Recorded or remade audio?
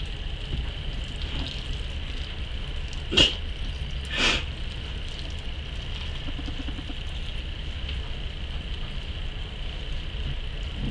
recorded